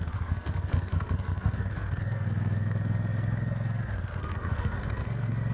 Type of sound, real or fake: fake